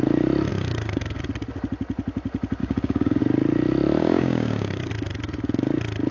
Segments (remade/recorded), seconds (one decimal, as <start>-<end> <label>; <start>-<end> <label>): 0.0-0.5 recorded; 0.5-1.2 remade; 1.2-2.6 recorded; 2.6-3.2 remade; 3.2-4.0 recorded; 4.0-4.9 remade; 4.9-6.1 recorded